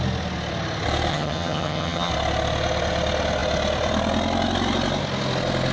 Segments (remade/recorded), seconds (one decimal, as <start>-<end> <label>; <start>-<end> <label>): 0.0-1.1 recorded; 1.1-2.1 remade; 2.1-5.7 recorded